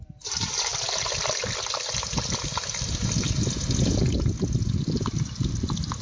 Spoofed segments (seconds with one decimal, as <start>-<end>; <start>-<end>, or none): none